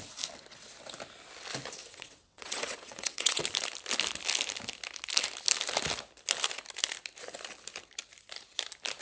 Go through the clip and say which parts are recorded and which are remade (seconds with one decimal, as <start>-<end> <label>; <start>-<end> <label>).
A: 0.0-1.8 recorded; 1.8-3.4 remade; 3.4-9.0 recorded